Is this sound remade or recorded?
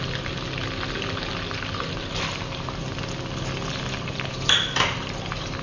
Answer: recorded